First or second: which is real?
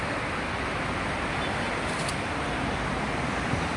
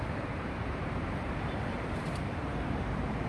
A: first